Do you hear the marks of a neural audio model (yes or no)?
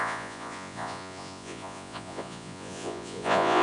yes